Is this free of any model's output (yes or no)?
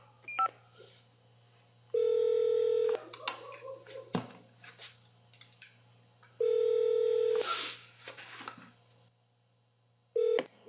yes